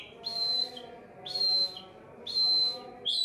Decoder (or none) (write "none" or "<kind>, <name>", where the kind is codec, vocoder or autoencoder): none